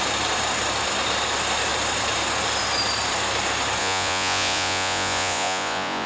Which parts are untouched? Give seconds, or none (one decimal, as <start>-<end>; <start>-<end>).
0.0-3.8